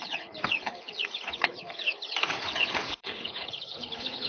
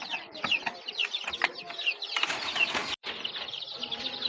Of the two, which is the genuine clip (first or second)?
second